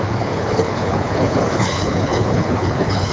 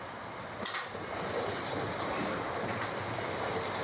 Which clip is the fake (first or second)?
first